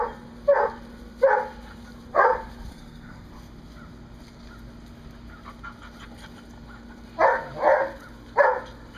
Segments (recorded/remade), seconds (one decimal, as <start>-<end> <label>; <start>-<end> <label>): 0.0-2.7 recorded; 2.7-3.3 remade; 3.3-9.0 recorded